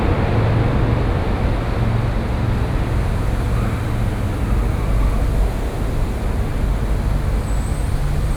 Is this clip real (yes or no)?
yes